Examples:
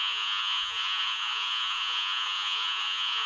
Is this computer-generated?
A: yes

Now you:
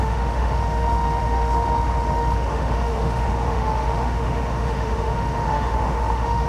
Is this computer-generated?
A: yes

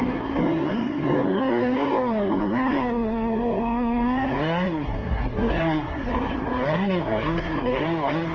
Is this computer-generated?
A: yes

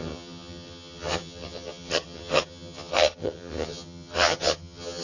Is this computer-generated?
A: yes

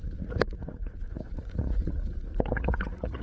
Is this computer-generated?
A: yes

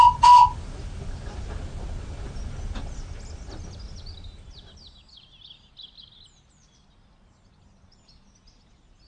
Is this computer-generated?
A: no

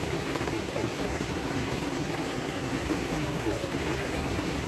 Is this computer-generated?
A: yes